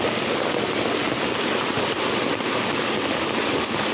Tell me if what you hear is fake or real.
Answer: real